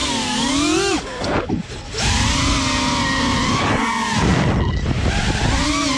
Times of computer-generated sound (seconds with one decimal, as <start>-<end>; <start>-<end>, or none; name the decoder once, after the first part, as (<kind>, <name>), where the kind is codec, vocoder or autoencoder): 0.0-1.5 (codec, DAC)